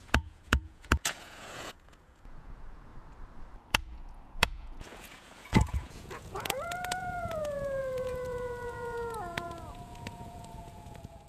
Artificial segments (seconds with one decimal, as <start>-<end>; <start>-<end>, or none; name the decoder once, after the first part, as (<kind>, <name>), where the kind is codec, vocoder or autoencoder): 0.0-2.9 (vocoder, Vocos); 3.7-11.3